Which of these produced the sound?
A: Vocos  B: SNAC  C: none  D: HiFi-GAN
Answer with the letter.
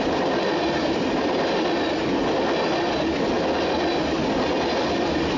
C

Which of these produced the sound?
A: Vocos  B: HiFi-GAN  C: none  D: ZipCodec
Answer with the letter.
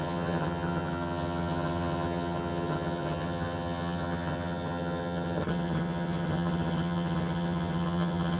B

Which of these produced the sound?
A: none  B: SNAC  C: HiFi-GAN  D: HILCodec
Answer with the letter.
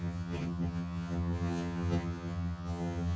C